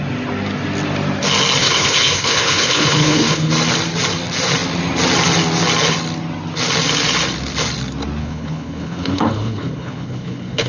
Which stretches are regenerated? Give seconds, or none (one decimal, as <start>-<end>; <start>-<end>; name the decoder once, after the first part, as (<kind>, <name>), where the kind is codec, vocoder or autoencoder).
1.6-3.5 (codec, HILCodec); 8.2-10.7